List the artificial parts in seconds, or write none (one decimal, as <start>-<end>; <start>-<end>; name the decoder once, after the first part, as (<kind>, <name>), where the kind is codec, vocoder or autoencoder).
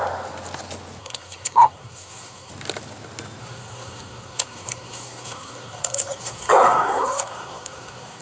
1.0-2.5 (codec, SNAC); 3.4-8.2